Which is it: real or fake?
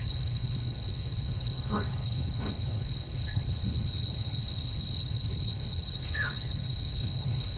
fake